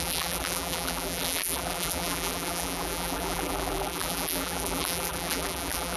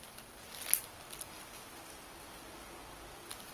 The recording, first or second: second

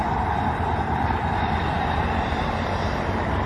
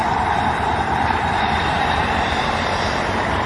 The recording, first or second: first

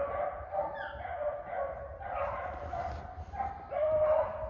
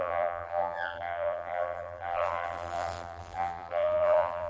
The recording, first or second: first